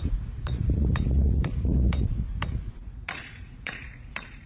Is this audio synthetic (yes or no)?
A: yes